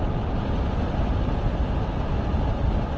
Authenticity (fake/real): real